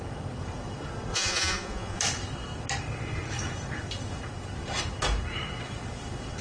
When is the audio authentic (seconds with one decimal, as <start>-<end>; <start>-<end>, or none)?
0.0-1.1; 2.0-6.4